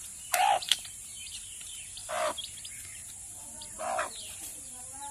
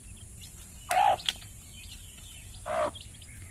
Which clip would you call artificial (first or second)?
first